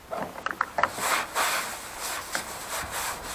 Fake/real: real